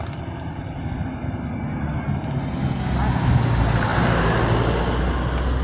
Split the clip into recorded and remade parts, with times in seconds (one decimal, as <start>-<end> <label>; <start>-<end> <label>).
0.0-5.6 recorded